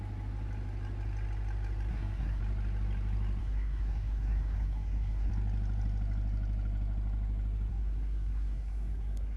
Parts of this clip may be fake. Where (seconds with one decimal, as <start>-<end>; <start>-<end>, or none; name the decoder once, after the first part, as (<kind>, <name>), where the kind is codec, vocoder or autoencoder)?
1.9-2.4 (codec, SNAC); 3.4-5.3; 7.7-9.4